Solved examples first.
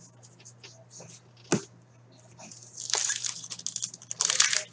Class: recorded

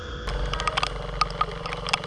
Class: recorded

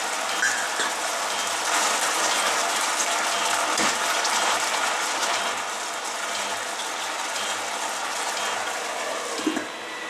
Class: recorded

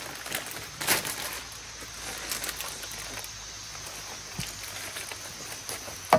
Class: recorded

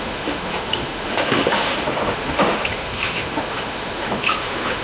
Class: remade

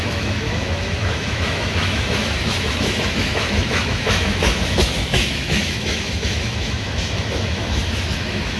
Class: remade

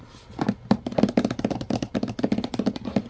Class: recorded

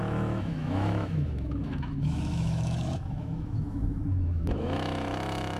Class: remade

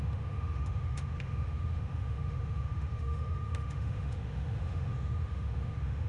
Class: remade